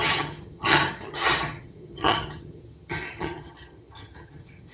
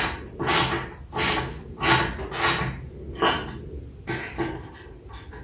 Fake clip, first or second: first